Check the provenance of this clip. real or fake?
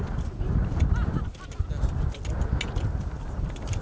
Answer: real